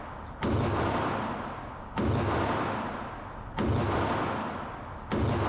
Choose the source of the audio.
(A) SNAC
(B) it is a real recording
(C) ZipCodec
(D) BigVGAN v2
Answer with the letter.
B